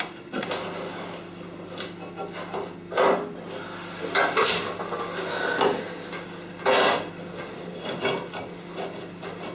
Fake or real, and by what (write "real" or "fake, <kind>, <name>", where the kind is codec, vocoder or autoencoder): real